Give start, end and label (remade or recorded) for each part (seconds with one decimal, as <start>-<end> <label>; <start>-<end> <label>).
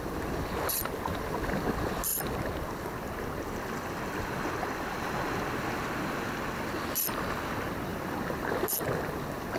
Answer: 0.0-9.6 recorded